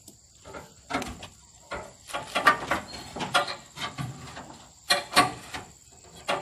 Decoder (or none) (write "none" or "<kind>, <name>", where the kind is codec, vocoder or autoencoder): none